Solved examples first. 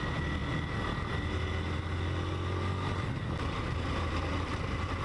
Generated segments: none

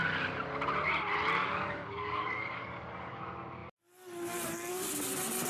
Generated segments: 1.4-3.2 (codec, DAC)

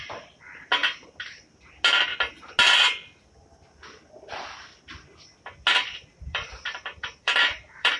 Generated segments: 6.1-8.0 (vocoder, BigVGAN v2)

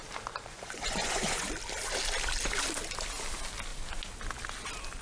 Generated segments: 0.5-1.5 (vocoder, Vocos)

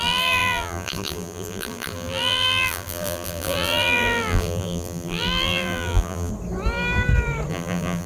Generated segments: 0.0-6.3 (vocoder, BigVGAN v2); 7.5-8.1

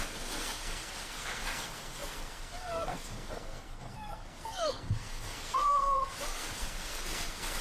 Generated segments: 0.0-7.6 (codec, SNAC)

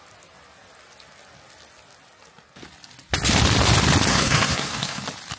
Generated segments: 4.1-5.0 (codec, SNAC)